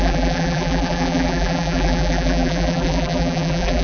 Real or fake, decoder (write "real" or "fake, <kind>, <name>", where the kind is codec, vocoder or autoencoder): fake, vocoder, BigVGAN v2